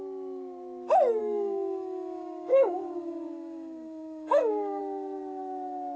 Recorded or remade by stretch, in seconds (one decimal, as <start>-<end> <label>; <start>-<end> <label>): 0.0-1.2 recorded; 1.2-4.8 remade; 4.8-6.0 recorded